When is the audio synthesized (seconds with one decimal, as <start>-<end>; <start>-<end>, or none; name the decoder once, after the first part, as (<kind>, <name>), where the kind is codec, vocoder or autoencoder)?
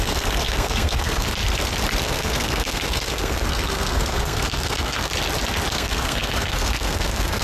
0.0-1.4 (codec, SNAC); 2.0-5.1; 5.7-7.4